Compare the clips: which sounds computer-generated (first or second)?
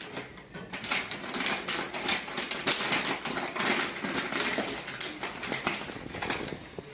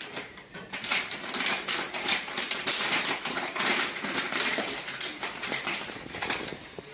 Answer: second